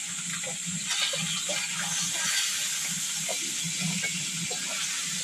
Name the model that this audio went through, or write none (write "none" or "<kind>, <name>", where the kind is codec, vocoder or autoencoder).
none